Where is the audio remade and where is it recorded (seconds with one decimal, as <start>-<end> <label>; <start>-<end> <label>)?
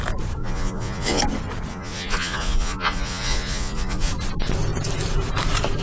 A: 0.0-0.4 recorded; 0.4-1.2 remade; 1.2-1.7 recorded; 1.7-4.1 remade; 4.1-5.8 recorded